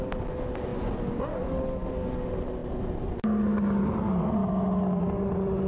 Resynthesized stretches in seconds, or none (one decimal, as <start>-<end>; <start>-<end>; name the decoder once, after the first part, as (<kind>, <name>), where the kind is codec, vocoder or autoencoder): none